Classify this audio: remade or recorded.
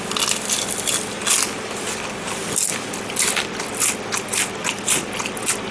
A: recorded